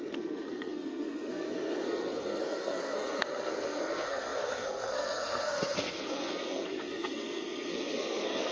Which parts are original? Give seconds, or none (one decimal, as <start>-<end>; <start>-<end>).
none